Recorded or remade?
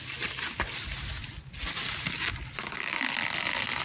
recorded